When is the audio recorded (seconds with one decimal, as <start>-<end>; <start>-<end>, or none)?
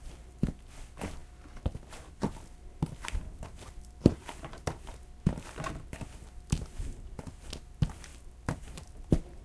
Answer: 0.0-9.4